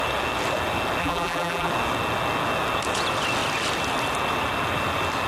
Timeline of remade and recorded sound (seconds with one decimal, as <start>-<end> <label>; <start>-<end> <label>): 0.0-1.0 recorded; 1.0-1.7 remade; 1.7-5.3 recorded